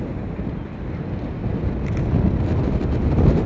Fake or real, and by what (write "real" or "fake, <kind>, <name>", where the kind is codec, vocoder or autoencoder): real